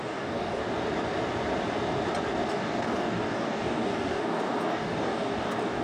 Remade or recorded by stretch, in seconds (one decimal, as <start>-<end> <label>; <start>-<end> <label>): 0.0-0.6 remade; 0.6-2.5 recorded; 2.5-5.8 remade